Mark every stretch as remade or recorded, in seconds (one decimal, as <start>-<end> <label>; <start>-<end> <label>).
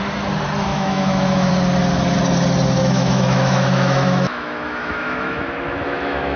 0.0-0.7 recorded; 0.7-1.5 remade; 1.5-2.8 recorded; 2.8-6.4 remade